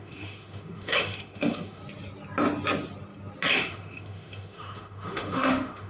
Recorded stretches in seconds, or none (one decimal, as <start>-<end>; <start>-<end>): 1.8-3.5